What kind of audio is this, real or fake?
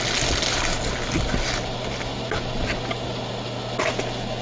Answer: real